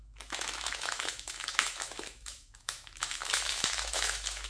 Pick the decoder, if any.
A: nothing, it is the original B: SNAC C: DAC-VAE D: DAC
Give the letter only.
C